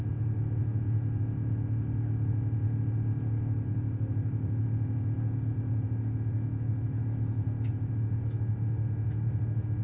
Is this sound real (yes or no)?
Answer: yes